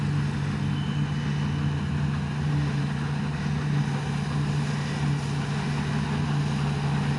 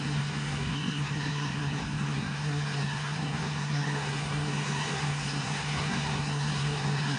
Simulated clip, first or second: second